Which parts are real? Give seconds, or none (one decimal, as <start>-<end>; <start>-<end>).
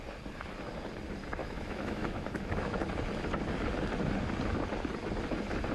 0.0-1.4; 2.8-5.7